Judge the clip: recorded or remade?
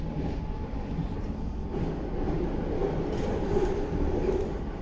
recorded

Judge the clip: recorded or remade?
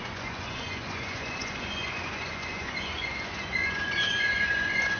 remade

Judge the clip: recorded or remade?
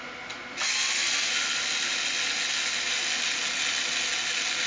recorded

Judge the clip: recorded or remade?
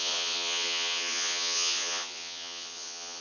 remade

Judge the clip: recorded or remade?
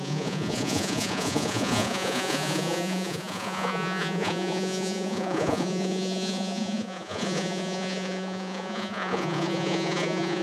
remade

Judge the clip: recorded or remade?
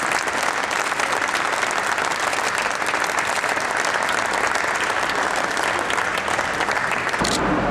recorded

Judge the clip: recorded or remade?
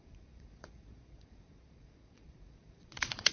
remade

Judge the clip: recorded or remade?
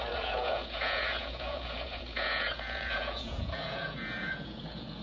remade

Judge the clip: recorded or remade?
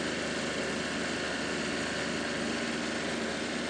recorded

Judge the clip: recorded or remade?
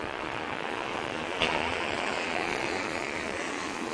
remade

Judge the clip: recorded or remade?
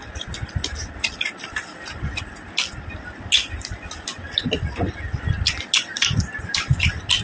recorded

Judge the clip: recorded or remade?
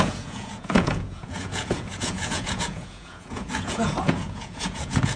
remade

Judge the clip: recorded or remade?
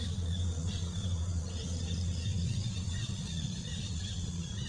remade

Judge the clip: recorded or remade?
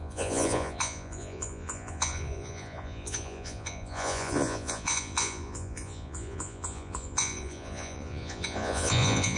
remade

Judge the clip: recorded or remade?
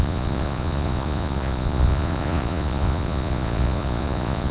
remade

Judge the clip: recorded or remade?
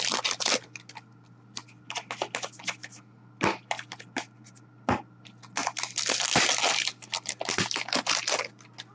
recorded